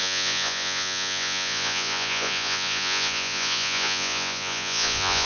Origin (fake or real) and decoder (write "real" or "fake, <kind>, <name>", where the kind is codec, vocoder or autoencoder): fake, vocoder, Vocos